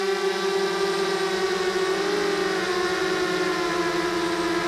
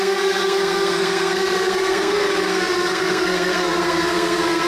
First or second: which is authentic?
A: first